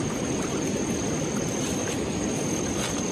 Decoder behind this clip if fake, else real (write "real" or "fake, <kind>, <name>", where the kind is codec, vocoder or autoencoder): real